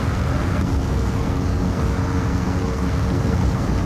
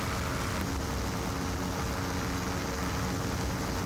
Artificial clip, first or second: first